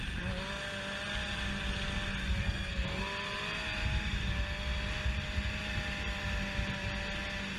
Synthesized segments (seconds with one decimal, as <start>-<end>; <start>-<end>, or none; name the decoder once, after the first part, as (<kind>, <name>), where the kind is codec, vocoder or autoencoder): 2.4-3.0 (codec, SNAC)